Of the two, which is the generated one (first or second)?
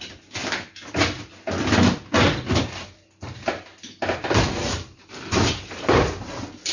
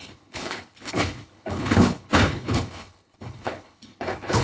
second